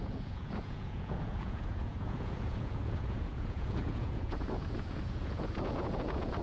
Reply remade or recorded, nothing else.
remade